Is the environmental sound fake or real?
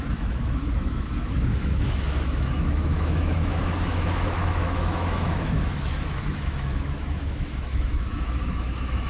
fake